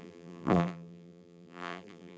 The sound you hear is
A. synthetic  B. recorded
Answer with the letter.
A